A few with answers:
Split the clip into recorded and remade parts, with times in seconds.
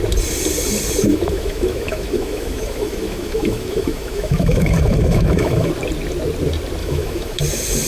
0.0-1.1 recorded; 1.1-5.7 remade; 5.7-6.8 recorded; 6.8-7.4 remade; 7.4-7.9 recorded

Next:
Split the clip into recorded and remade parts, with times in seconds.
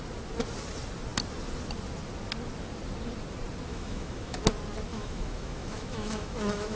0.0-3.7 recorded; 3.7-4.4 remade; 4.4-4.9 recorded; 4.9-6.8 remade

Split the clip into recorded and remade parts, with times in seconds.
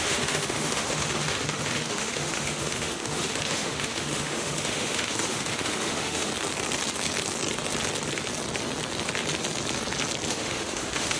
0.0-6.3 remade; 6.3-10.3 recorded; 10.3-11.2 remade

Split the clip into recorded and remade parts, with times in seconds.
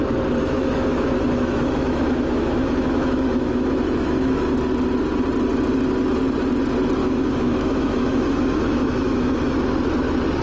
0.0-0.4 recorded; 0.4-4.5 remade; 4.5-7.0 recorded; 7.0-9.5 remade; 9.5-10.4 recorded